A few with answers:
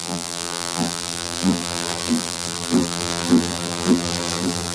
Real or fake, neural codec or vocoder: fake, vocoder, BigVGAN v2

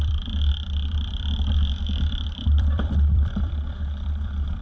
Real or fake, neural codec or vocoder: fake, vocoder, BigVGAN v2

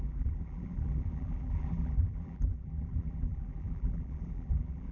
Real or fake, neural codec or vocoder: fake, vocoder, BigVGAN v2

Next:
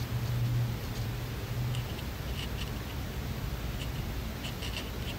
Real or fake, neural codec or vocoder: real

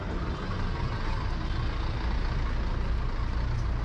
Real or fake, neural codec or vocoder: real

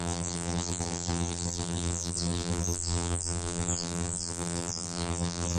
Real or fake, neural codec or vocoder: fake, vocoder, BigVGAN v2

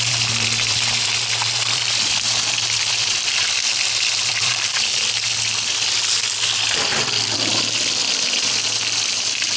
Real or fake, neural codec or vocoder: fake, vocoder, BigVGAN v2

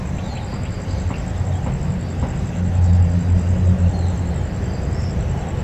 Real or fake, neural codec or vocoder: real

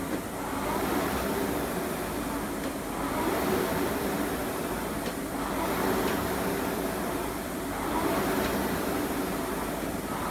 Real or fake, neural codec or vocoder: real